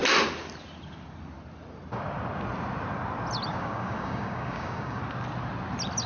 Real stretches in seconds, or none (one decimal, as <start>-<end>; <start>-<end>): 0.0-3.5; 5.0-6.1